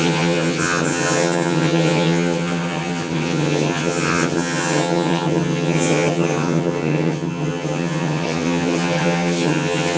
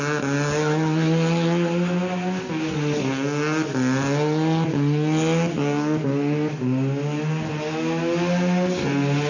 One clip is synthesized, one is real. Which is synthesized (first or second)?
first